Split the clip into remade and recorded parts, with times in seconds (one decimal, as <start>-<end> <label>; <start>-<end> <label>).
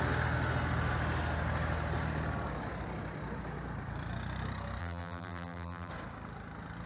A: 0.0-4.8 recorded; 4.8-5.9 remade; 5.9-6.9 recorded